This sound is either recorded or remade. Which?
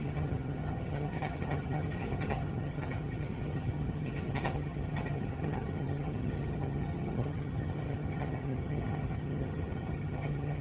remade